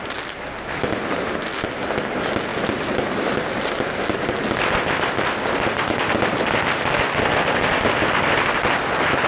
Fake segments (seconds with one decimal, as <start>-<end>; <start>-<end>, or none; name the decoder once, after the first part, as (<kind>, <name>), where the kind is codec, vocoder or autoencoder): none

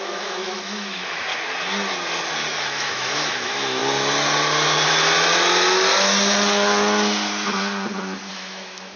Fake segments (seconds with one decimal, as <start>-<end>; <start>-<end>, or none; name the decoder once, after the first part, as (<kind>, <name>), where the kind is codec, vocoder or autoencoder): 0.0-1.3 (autoencoder, DAC-VAE); 2.6-3.8; 8.3-9.0

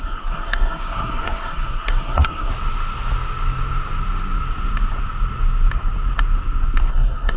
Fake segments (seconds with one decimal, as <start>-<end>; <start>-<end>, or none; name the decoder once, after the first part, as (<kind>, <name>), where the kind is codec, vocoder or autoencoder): 0.0-2.5 (codec, SNAC); 6.9-7.4

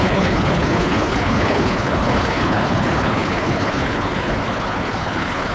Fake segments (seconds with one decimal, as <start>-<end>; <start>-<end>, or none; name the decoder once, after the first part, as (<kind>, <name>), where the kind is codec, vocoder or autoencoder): 0.0-5.5 (codec, HILCodec)